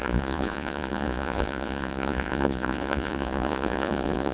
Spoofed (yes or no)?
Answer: yes